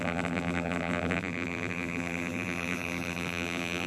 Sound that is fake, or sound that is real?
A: fake